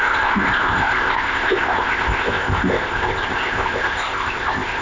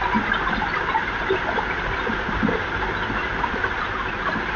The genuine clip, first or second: second